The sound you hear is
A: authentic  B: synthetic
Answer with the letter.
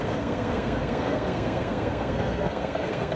B